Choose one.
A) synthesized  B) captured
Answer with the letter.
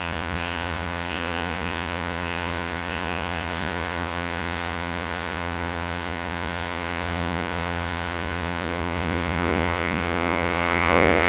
A